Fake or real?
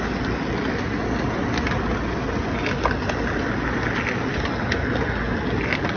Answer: real